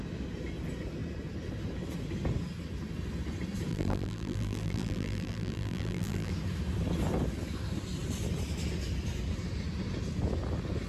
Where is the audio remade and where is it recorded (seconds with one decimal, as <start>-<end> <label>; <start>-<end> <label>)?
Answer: 0.0-3.7 recorded; 3.7-6.3 remade; 6.3-10.9 recorded